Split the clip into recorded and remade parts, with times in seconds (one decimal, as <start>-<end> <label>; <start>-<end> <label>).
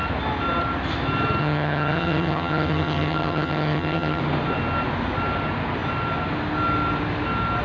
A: 0.0-1.4 recorded; 1.4-4.2 remade; 4.2-7.6 recorded